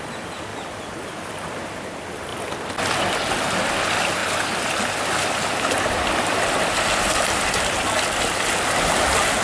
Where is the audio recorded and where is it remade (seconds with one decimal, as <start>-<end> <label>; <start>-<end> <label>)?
0.0-0.5 recorded; 0.5-1.6 remade; 1.6-4.2 recorded; 4.2-8.2 remade; 8.2-9.4 recorded